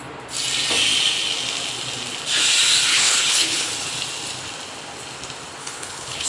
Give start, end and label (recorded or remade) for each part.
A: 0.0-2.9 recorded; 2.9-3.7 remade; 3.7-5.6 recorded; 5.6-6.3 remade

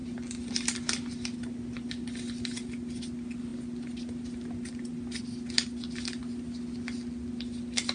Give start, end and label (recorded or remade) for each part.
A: 0.0-7.9 recorded

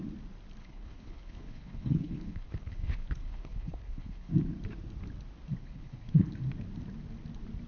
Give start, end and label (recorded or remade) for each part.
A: 0.0-0.6 recorded; 0.6-4.3 remade; 4.3-5.6 recorded; 5.6-6.3 remade; 6.3-7.7 recorded